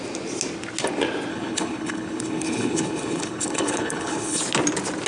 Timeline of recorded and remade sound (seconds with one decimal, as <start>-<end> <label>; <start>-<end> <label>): 0.0-1.3 recorded; 1.3-4.4 remade; 4.4-5.1 recorded